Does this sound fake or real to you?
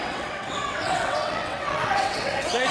fake